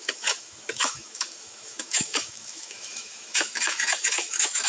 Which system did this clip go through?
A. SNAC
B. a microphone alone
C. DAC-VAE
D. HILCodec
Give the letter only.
C